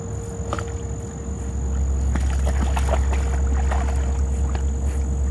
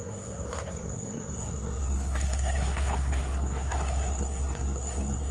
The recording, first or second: first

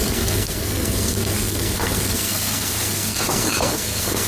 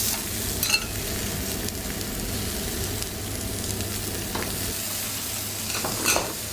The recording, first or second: second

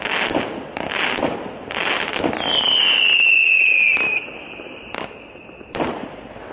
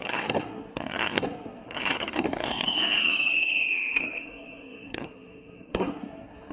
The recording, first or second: first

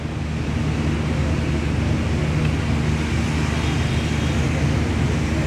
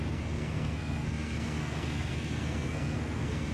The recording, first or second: first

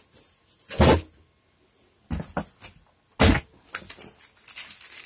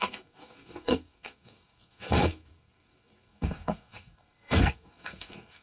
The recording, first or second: first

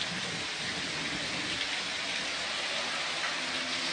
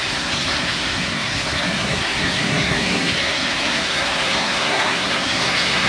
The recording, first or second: first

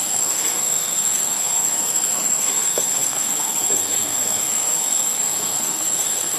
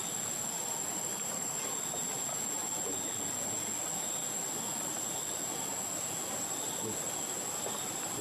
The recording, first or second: second